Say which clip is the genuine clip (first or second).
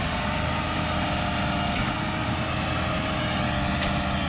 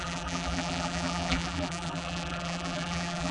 first